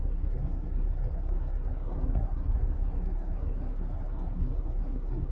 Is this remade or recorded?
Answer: remade